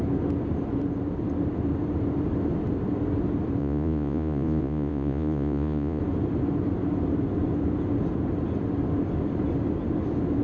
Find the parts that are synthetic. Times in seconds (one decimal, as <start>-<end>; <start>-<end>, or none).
3.6-6.0